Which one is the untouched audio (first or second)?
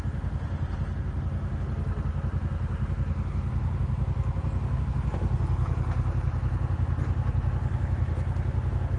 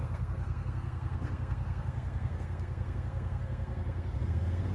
first